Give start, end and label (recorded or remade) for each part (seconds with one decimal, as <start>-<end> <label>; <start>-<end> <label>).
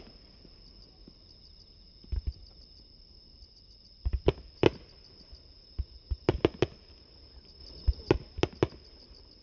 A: 0.0-9.4 recorded